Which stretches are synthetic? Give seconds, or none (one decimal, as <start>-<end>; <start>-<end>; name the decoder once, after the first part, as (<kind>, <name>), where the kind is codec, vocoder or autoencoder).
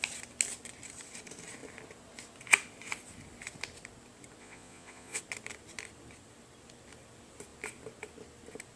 4.4-5.2 (vocoder, Vocos)